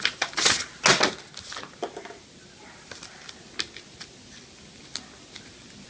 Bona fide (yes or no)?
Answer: yes